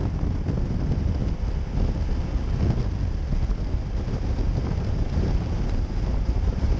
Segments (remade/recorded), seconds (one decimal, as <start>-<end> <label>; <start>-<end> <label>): 0.0-4.1 recorded; 4.1-4.5 remade; 4.5-5.2 recorded; 5.2-6.8 remade